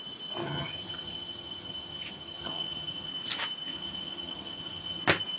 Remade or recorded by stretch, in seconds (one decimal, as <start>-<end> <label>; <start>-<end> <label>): 0.0-0.4 recorded; 0.4-3.1 remade; 3.1-3.7 recorded; 3.7-5.0 remade; 5.0-5.4 recorded